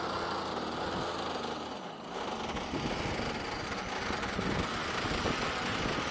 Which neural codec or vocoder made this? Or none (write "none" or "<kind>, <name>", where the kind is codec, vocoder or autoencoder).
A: none